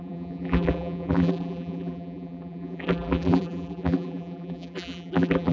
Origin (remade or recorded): remade